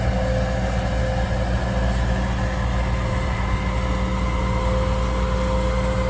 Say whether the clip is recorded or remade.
recorded